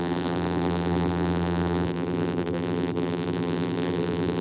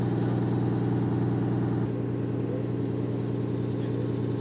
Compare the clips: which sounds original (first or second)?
second